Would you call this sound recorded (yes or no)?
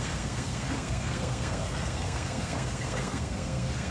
no